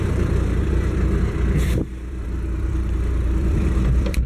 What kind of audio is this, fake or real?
fake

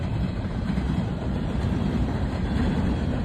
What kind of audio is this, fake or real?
fake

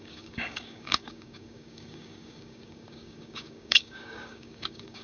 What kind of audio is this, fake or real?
fake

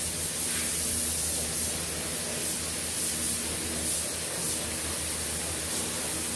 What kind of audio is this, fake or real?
real